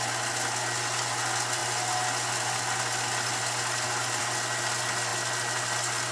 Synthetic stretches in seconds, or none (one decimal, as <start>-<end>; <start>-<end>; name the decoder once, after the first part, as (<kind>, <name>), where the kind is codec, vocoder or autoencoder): none